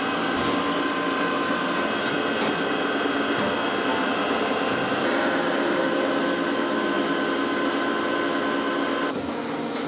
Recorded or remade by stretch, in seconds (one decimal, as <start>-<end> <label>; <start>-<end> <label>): 0.0-3.9 recorded; 3.9-6.1 remade; 6.1-9.9 recorded